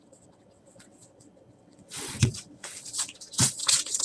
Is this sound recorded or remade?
remade